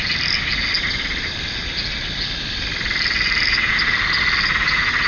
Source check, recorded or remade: recorded